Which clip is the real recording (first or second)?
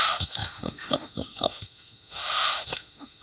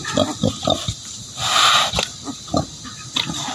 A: second